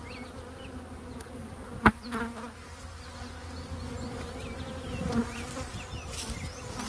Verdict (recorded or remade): recorded